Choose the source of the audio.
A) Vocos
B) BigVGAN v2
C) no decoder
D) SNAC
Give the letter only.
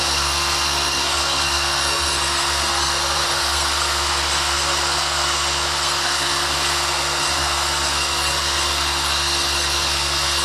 D